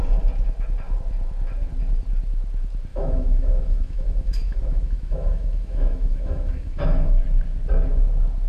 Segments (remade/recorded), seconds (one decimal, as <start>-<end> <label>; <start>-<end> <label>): 0.0-2.9 recorded; 2.9-7.2 remade; 7.2-8.5 recorded